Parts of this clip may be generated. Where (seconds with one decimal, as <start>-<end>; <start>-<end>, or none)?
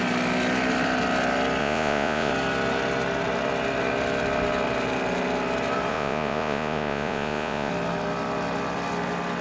1.6-2.3; 5.9-7.7